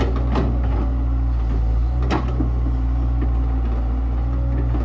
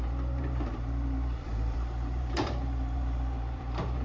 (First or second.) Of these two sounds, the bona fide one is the first